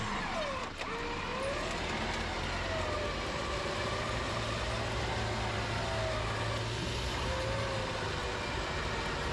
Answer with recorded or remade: recorded